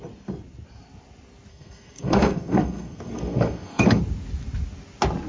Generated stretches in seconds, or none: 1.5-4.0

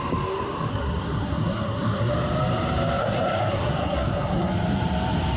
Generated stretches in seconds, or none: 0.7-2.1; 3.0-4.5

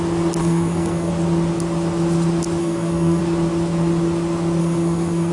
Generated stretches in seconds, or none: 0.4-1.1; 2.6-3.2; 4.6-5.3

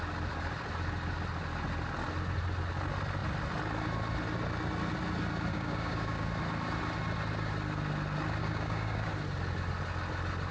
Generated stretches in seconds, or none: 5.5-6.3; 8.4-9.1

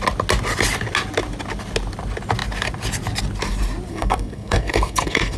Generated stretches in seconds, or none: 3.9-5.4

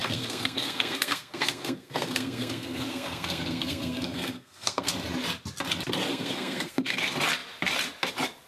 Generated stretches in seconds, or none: 0.0-4.9; 6.1-7.0